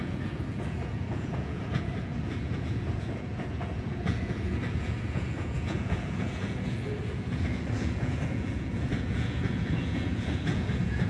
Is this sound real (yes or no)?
no